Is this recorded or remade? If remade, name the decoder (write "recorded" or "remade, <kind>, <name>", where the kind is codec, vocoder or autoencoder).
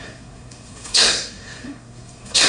remade, codec, SNAC